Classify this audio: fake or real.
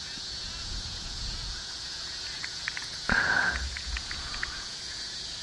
fake